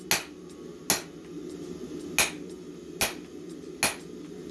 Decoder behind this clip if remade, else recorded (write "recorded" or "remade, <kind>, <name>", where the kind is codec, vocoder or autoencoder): recorded